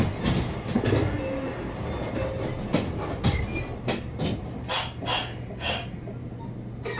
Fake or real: real